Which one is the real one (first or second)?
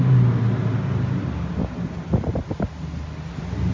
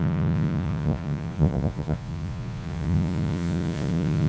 first